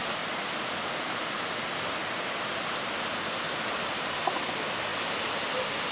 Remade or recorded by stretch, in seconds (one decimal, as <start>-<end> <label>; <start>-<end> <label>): 0.0-5.9 recorded